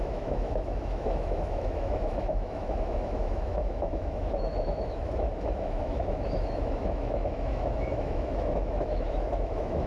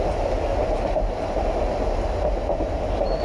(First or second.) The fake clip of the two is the first